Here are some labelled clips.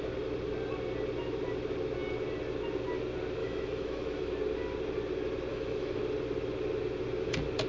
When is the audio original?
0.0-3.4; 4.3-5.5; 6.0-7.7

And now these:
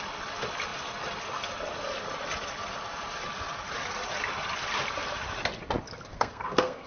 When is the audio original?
0.0-6.1

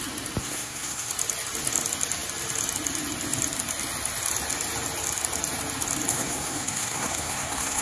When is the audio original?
0.0-0.4; 1.1-6.1

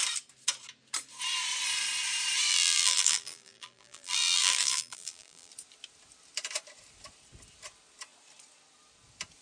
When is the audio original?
0.0-2.5; 5.5-9.4